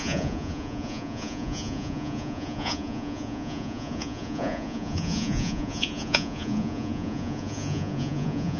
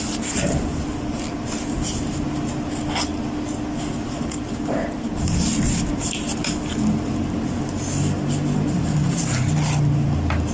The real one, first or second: second